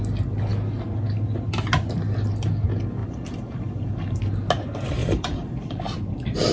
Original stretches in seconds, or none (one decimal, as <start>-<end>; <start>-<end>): 0.0-3.0; 4.2-5.0; 5.8-6.5